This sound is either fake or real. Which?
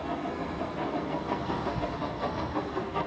fake